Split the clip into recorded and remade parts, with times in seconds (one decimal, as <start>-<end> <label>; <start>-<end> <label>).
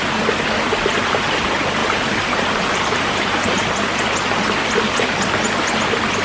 0.0-1.8 recorded; 1.8-4.3 remade; 4.3-6.2 recorded